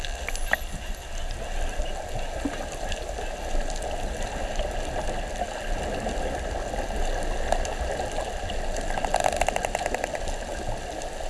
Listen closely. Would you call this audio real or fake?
real